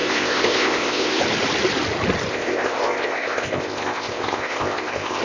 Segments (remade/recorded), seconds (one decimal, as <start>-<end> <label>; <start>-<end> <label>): 0.0-1.2 remade; 1.2-2.3 recorded; 2.3-5.2 remade